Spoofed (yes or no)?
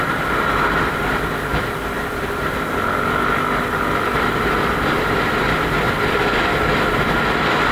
no